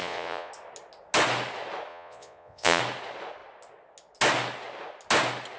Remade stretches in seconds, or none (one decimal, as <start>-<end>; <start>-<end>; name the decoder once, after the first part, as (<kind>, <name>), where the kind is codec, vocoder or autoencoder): 0.0-0.5 (vocoder, Vocos); 1.9-2.8